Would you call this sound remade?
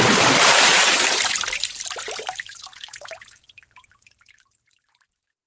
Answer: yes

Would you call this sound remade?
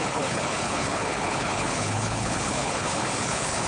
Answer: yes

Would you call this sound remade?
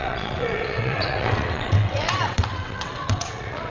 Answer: yes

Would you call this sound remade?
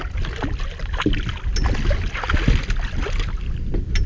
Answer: no